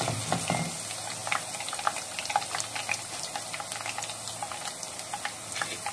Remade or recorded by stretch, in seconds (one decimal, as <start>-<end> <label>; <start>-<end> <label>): 0.0-5.9 recorded